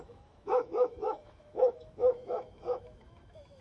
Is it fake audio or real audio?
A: fake